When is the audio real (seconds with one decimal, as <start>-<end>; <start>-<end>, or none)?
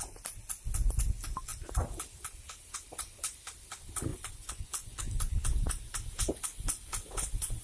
0.0-4.1; 5.1-7.6